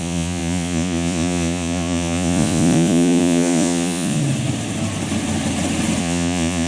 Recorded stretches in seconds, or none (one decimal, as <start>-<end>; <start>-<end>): 4.2-6.0